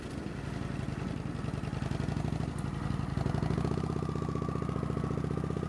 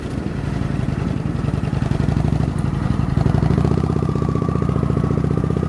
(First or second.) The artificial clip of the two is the second